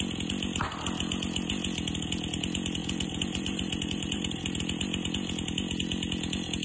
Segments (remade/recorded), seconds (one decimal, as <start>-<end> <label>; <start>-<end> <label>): 0.0-2.8 recorded; 2.8-4.6 remade; 4.6-6.6 recorded